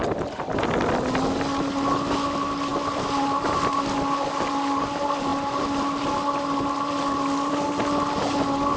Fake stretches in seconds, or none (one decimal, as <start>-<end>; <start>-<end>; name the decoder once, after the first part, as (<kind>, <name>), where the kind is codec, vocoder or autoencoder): none